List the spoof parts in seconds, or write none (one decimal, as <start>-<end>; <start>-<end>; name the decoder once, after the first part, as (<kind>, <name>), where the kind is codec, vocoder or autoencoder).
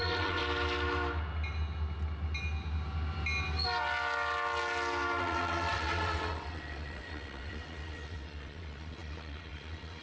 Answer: 0.0-0.4 (vocoder, WaveNeXt); 5.2-10.0